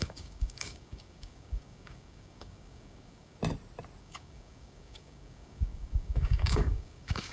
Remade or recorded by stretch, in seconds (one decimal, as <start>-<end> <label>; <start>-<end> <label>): 0.0-3.4 remade; 3.4-4.0 recorded; 4.0-7.3 remade